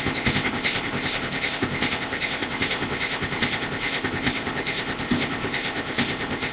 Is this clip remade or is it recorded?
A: remade